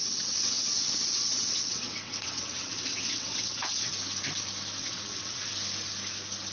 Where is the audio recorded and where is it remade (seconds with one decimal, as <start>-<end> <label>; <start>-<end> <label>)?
0.0-3.9 remade; 3.9-4.8 recorded; 4.8-5.5 remade; 5.5-6.5 recorded